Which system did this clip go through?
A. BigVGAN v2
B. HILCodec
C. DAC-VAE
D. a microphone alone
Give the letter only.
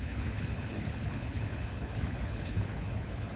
B